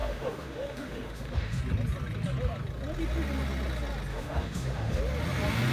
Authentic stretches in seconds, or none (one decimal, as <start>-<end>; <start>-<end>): 1.6-4.1; 5.0-5.7

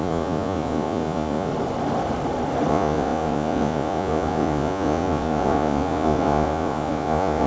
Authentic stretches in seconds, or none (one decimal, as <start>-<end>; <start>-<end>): 1.5-2.7

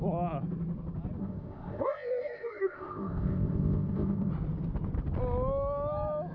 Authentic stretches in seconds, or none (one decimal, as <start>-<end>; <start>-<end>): 0.0-1.2; 4.3-6.3

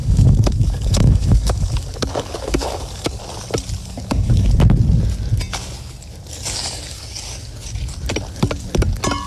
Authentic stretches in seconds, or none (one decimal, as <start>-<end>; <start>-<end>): 3.2-3.8; 4.5-6.6; 7.2-9.3

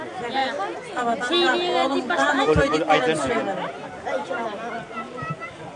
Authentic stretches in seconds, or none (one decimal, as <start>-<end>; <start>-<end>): 0.0-5.8

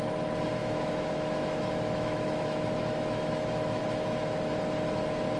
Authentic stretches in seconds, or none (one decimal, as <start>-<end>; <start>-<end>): 0.0-0.6; 3.8-5.4